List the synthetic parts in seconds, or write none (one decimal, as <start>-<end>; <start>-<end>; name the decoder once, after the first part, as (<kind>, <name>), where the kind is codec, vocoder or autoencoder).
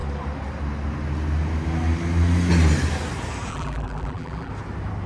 3.5-4.5 (vocoder, BigVGAN v2)